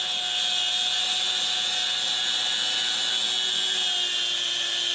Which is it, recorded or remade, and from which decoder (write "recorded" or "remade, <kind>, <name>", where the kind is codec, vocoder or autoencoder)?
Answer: recorded